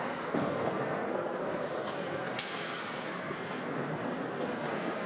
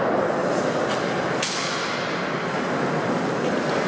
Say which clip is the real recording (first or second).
second